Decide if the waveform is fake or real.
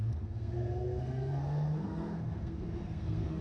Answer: fake